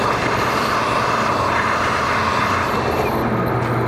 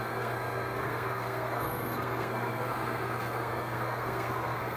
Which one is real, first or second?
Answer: first